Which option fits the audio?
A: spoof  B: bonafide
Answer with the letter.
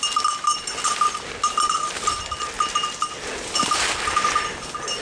B